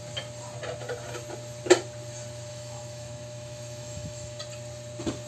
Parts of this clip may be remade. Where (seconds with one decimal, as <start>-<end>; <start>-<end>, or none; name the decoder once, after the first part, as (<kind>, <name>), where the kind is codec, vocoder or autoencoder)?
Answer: 2.5-4.4 (autoencoder, DAC-VAE)